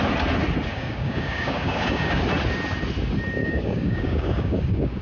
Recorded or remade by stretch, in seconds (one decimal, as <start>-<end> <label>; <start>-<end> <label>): 0.0-0.7 recorded; 0.7-2.2 remade; 2.2-3.4 recorded; 3.4-5.0 remade